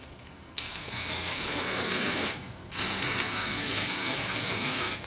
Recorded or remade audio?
remade